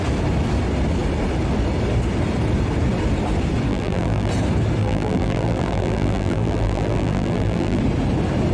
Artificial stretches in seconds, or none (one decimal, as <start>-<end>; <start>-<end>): 3.7-4.3; 4.8-7.8